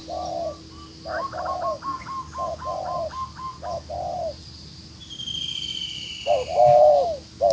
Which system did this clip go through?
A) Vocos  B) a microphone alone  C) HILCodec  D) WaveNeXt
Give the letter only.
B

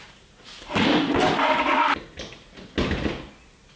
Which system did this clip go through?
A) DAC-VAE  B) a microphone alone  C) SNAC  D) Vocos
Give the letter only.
B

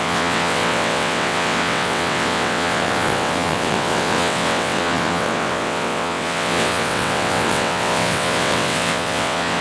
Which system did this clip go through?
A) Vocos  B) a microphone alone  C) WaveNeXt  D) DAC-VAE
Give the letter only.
C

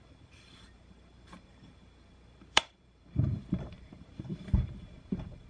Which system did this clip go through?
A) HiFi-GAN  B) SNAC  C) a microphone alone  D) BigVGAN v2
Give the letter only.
D